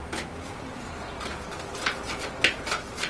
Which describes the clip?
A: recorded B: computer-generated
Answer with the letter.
A